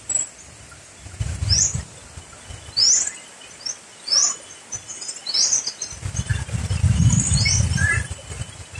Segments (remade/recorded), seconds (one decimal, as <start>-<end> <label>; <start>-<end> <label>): 0.0-8.8 recorded